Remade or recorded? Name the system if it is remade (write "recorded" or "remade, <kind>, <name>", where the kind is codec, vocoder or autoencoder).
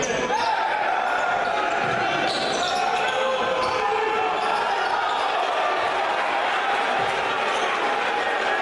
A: recorded